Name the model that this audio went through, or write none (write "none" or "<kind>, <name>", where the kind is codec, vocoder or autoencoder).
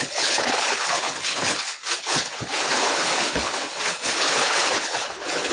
codec, HILCodec